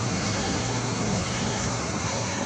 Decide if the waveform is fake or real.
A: fake